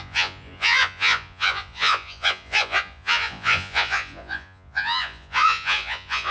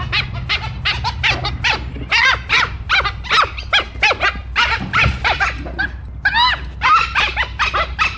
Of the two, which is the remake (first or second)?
first